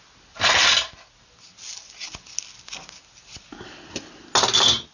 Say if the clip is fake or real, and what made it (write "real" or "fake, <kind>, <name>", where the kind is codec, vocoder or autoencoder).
real